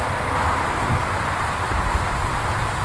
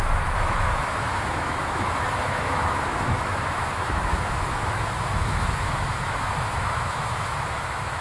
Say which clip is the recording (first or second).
first